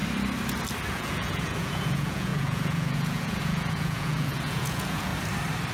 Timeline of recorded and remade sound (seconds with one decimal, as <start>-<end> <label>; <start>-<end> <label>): 0.0-0.9 recorded; 0.9-5.1 remade; 5.1-5.7 recorded